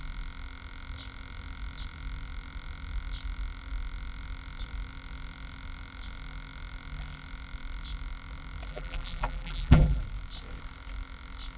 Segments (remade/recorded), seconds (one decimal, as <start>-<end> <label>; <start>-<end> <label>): 0.0-8.7 recorded; 8.7-10.0 remade; 10.0-11.6 recorded

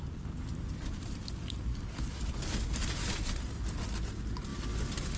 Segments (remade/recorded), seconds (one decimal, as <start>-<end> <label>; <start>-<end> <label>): 0.0-1.7 recorded; 1.7-2.4 remade; 2.4-5.2 recorded

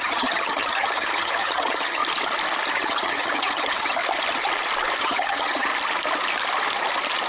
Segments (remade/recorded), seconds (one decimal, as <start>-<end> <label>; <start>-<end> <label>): 0.0-2.0 remade; 2.0-2.7 recorded; 2.7-4.0 remade; 4.0-5.0 recorded; 5.0-5.7 remade; 5.7-7.3 recorded

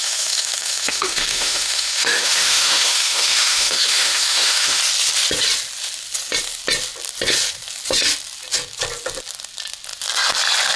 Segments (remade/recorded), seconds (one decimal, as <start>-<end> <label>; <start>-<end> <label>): 0.0-4.8 remade; 4.8-10.8 recorded

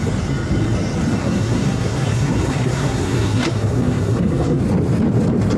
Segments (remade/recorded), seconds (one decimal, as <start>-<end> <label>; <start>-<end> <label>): 0.0-1.2 recorded; 1.2-4.6 remade; 4.6-5.6 recorded